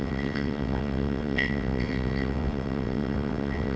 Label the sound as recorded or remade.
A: remade